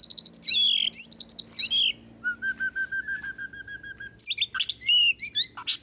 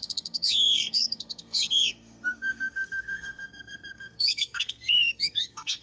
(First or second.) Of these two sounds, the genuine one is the first